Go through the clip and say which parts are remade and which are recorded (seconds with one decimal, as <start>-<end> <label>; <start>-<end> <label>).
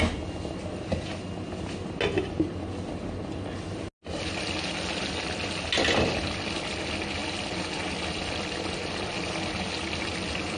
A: 0.0-10.6 recorded